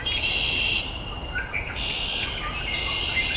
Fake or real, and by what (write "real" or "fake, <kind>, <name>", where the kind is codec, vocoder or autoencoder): real